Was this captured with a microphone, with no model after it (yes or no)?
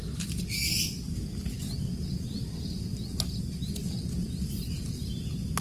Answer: yes